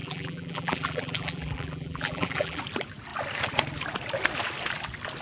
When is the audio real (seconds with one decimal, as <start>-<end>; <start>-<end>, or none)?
2.6-5.2